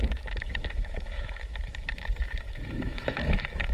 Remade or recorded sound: remade